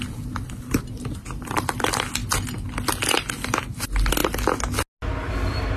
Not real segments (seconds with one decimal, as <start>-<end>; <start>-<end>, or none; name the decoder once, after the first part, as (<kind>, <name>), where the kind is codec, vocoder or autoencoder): none